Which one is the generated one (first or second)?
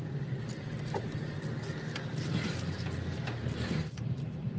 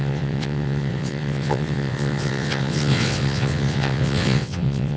second